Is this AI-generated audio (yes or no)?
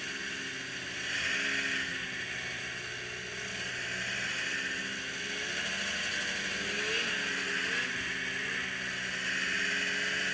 no